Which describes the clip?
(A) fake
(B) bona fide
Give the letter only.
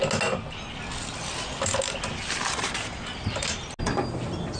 B